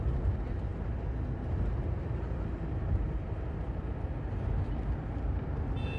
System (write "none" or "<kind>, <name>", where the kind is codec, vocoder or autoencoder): none